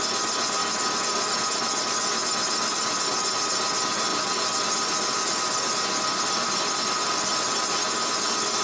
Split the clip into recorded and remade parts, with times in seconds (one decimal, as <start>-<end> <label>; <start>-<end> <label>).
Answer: 0.0-0.6 recorded; 0.6-1.3 remade; 1.3-4.1 recorded; 4.1-7.6 remade; 7.6-8.6 recorded